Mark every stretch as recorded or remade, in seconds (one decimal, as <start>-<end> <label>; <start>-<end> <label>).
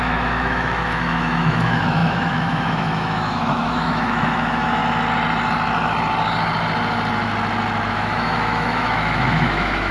0.0-4.8 remade; 4.8-7.9 recorded; 7.9-9.9 remade